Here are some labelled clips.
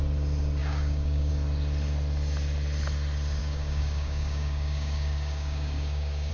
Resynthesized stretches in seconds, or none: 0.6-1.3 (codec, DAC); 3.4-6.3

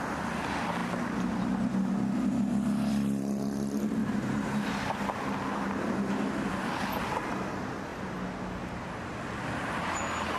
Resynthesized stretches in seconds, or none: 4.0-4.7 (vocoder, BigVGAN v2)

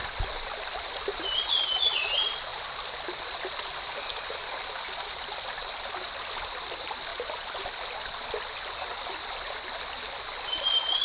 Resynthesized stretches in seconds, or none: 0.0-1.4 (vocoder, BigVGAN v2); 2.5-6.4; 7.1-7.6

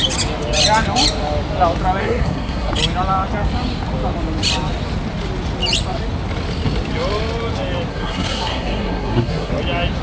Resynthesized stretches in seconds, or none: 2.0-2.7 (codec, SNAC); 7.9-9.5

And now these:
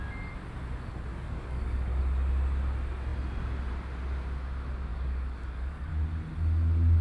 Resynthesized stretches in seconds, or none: 1.1-2.0 (codec, DAC); 4.9-5.9

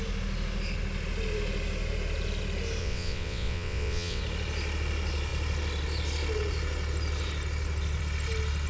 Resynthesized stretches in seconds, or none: 2.8-4.2 (vocoder, WaveNeXt)

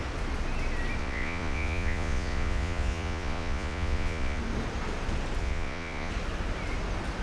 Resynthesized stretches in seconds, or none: 1.0-4.4 (vocoder, Vocos); 5.4-6.1